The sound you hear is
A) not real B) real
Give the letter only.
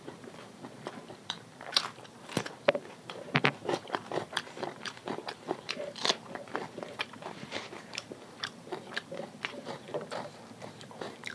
A